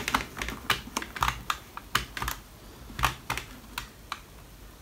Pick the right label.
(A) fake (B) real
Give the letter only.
B